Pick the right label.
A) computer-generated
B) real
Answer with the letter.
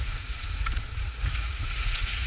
A